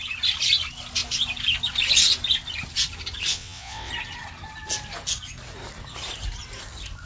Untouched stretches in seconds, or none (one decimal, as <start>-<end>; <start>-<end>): 0.0-3.3; 3.9-7.1